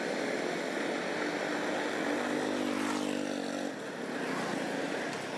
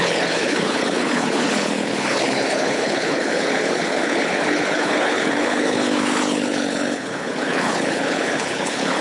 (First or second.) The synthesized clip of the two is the second